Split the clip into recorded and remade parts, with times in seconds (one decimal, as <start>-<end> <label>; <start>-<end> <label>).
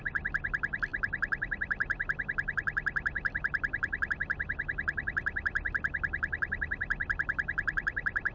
0.0-8.3 recorded